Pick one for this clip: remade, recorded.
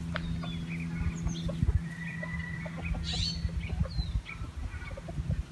recorded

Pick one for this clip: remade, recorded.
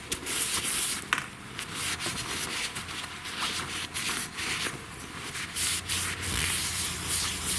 recorded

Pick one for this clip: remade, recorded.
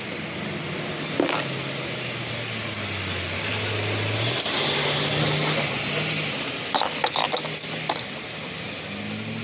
recorded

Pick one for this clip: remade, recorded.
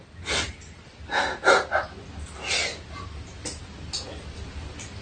recorded